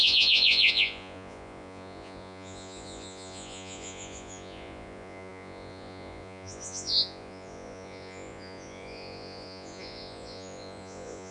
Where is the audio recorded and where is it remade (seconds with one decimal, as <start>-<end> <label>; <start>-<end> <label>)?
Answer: 0.0-11.3 remade